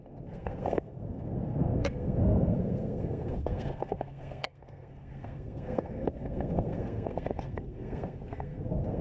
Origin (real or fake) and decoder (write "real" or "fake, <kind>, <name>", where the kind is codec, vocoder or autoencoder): fake, codec, SNAC